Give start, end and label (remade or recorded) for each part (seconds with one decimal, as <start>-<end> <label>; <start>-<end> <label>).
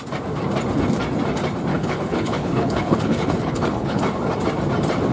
0.0-1.7 recorded; 1.7-4.0 remade; 4.0-5.1 recorded